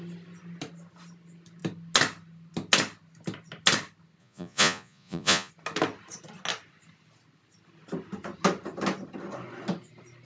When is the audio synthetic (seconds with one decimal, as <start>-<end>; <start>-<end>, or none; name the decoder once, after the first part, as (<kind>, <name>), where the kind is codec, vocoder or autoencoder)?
4.2-5.5 (vocoder, Vocos)